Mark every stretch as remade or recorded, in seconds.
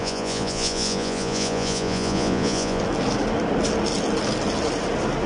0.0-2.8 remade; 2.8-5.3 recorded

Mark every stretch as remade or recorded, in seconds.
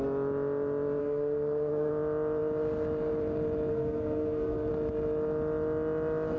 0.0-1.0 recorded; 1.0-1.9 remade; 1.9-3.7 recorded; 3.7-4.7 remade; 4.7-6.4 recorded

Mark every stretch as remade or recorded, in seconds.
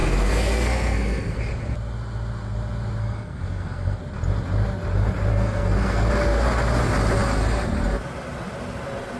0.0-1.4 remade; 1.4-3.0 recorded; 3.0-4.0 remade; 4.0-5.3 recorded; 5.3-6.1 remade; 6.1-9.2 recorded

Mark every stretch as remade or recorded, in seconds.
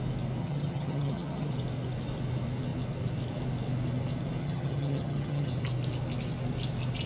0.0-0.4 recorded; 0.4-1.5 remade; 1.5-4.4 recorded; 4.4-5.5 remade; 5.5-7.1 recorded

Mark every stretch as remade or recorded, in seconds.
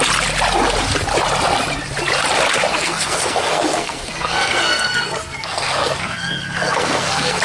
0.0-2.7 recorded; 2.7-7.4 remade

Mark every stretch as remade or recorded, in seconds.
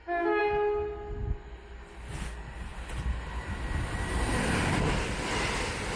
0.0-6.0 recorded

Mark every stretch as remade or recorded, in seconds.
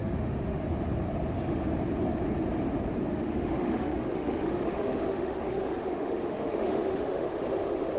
0.0-0.6 remade; 0.6-3.1 recorded; 3.1-8.0 remade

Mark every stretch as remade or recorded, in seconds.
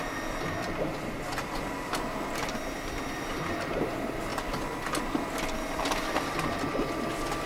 0.0-7.5 recorded